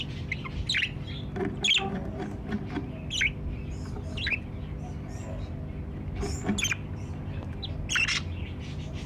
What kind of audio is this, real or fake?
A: real